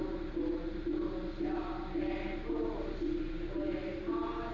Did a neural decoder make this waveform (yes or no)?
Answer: no